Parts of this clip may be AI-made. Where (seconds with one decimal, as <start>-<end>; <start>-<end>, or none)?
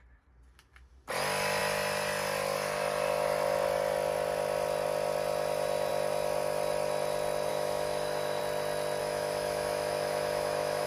7.5-8.4; 9.0-10.9